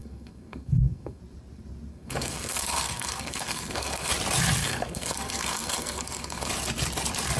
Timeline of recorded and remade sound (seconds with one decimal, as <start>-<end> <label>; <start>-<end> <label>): 0.0-1.2 remade; 1.2-1.9 recorded; 1.9-4.1 remade; 4.1-4.6 recorded; 4.6-6.5 remade; 6.5-7.4 recorded